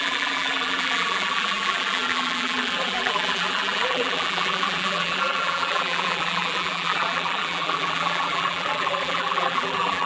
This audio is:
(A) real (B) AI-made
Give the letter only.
B